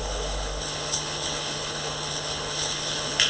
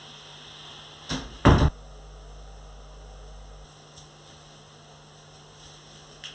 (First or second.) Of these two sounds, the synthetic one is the first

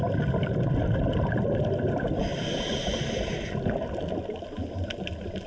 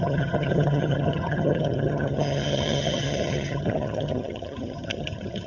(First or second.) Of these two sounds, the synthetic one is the second